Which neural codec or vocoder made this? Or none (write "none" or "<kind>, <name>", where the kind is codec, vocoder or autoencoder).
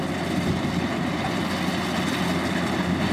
none